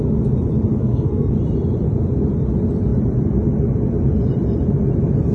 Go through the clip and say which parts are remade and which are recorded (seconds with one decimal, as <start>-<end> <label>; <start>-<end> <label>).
0.0-0.8 recorded; 0.8-1.3 remade; 1.3-5.3 recorded